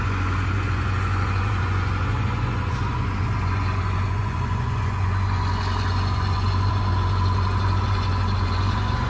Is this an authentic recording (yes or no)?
no